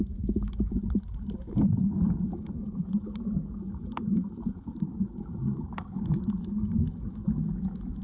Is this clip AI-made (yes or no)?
yes